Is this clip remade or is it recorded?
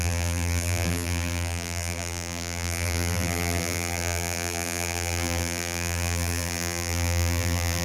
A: remade